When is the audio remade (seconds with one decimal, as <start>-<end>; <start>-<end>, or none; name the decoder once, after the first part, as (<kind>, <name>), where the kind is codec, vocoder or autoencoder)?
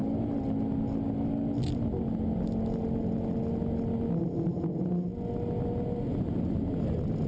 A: none